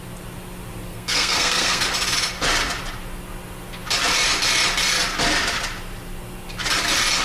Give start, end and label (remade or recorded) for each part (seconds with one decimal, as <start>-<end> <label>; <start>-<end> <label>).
0.0-0.9 recorded; 0.9-1.8 remade; 1.8-7.2 recorded